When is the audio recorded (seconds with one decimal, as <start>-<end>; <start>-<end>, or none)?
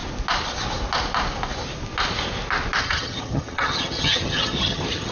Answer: 0.0-2.8